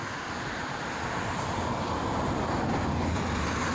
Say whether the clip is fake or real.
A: real